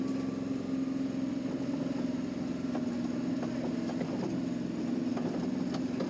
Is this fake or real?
real